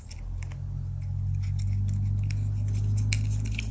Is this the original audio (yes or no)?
yes